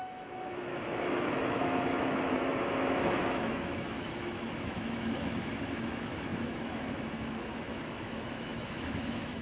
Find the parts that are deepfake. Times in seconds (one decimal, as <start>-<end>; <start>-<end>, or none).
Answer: 0.0-9.4